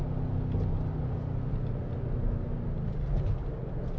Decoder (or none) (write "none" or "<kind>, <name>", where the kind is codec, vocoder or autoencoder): none